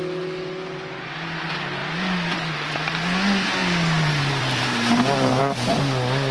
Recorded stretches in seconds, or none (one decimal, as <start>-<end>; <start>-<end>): 0.0-1.8; 5.4-6.3